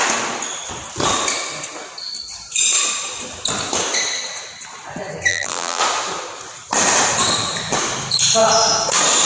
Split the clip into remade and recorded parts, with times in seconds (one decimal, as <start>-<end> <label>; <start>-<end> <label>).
0.0-5.3 recorded; 5.3-5.8 remade; 5.8-9.3 recorded